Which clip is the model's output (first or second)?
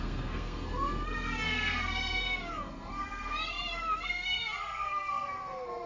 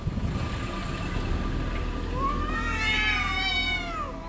first